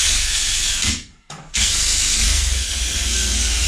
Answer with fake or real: fake